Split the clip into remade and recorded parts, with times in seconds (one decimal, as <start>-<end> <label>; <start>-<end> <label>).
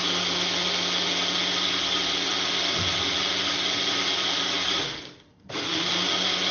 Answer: 0.0-6.5 recorded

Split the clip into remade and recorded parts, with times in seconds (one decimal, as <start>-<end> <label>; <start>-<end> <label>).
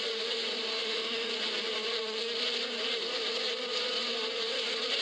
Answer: 0.0-0.7 recorded; 0.7-1.3 remade; 1.3-5.0 recorded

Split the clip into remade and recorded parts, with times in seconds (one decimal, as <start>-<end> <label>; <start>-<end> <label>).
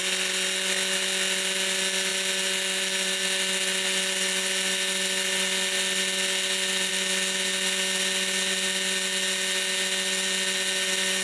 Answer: 0.0-11.2 recorded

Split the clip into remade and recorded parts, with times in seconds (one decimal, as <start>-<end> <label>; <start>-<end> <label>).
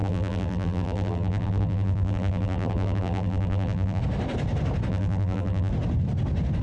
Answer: 0.0-4.0 remade; 4.0-4.9 recorded; 4.9-5.7 remade; 5.7-6.6 recorded